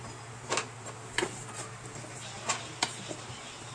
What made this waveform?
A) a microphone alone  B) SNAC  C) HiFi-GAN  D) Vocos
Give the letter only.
A